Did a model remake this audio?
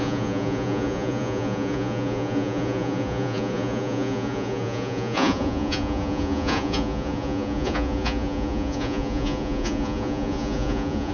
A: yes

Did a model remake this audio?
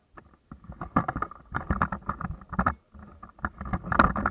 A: no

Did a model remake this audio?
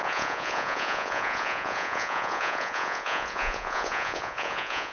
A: yes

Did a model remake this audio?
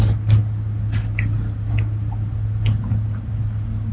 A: no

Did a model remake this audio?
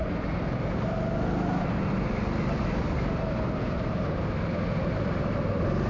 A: no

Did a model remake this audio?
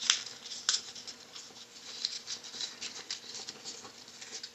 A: no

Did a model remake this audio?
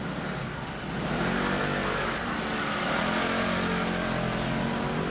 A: no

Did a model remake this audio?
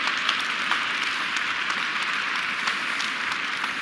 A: no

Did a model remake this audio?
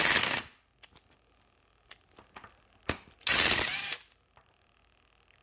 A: no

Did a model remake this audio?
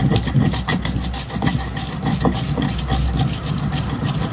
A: no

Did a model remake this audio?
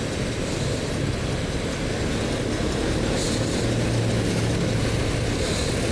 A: no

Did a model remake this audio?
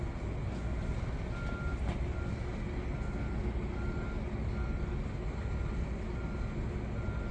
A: no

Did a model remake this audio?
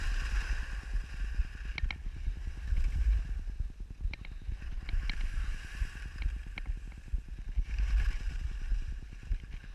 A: no